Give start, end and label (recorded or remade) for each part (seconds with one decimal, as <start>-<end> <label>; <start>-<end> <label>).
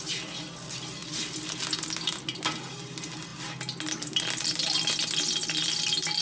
0.0-6.2 recorded